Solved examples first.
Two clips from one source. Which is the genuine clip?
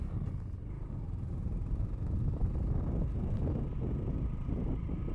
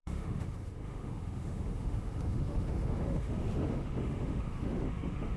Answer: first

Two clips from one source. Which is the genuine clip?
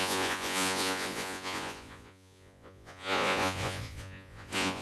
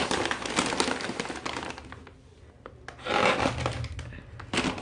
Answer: second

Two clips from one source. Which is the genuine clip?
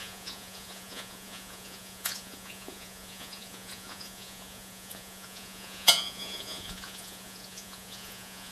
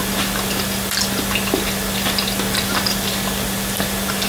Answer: second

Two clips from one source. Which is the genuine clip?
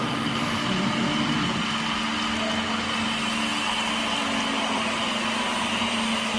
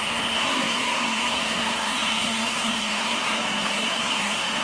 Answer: first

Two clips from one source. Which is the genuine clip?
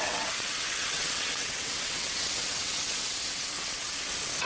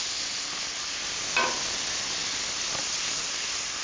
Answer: second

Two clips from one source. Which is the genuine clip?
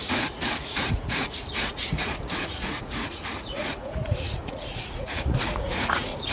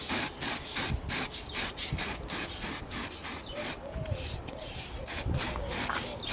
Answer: second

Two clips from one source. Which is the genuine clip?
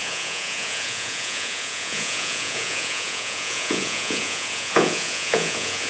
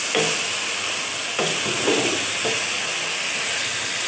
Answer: second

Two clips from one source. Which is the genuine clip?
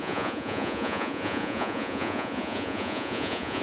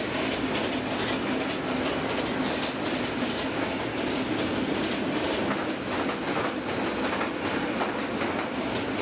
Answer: second